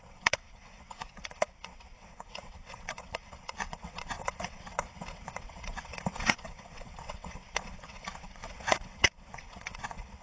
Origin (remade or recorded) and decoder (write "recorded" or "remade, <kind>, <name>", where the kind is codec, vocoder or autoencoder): remade, vocoder, WaveNeXt